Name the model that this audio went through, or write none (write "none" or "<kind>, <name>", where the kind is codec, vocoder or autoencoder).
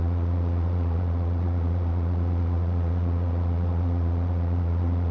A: vocoder, Vocos